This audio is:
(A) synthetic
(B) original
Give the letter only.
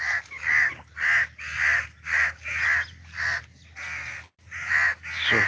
B